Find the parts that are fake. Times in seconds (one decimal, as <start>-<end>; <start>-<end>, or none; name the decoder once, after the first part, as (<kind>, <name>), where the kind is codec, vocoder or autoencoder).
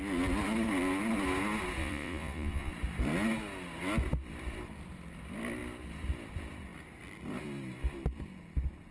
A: 1.8-2.7 (vocoder, Vocos)